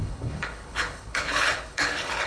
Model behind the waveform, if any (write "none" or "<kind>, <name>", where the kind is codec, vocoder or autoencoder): codec, HILCodec